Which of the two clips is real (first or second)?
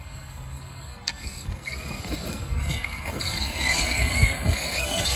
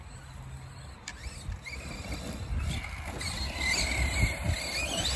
second